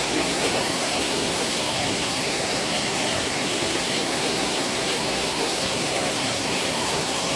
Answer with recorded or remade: remade